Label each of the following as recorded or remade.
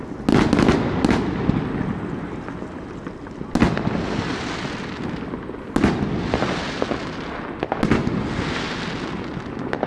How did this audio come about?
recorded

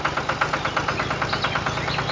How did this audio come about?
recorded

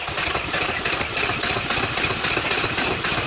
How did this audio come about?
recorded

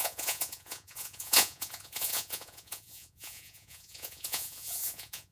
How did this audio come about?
remade